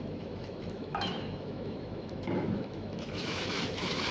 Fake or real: fake